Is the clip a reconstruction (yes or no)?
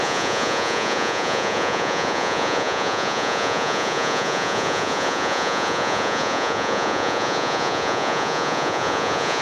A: yes